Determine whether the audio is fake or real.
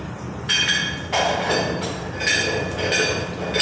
real